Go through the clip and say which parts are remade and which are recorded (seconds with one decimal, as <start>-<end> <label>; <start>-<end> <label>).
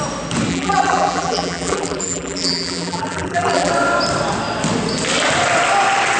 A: 0.0-0.5 recorded; 0.5-3.7 remade; 3.7-6.2 recorded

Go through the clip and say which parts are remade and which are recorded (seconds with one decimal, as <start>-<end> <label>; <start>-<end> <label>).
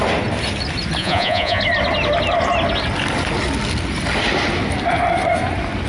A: 0.0-1.0 recorded; 1.0-1.6 remade; 1.6-5.9 recorded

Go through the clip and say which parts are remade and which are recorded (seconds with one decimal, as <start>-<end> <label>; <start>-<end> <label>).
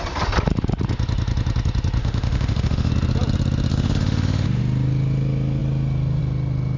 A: 0.0-2.0 recorded; 2.0-2.9 remade; 2.9-3.7 recorded; 3.7-4.6 remade; 4.6-6.8 recorded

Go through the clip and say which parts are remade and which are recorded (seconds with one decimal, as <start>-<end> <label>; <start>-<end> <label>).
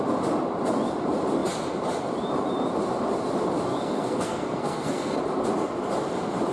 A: 0.0-3.7 recorded; 3.7-5.2 remade; 5.2-6.5 recorded